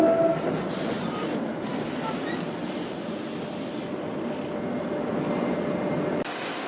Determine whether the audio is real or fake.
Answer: real